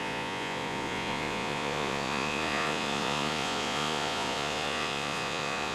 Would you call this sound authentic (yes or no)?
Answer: no